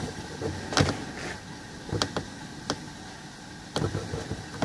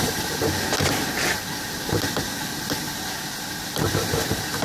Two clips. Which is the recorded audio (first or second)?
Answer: first